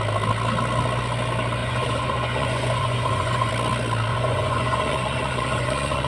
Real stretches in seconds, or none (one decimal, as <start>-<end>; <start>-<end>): 0.0-1.6; 3.5-4.1